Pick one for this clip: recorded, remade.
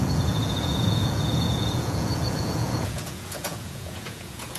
remade